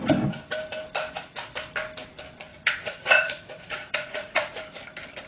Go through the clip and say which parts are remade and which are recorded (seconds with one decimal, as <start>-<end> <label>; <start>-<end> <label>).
0.0-2.5 recorded; 2.5-4.6 remade; 4.6-5.3 recorded